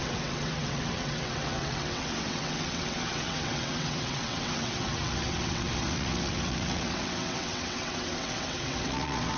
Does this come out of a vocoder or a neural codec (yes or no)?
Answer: yes